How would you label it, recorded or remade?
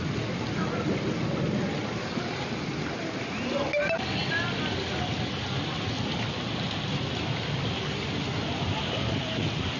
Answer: recorded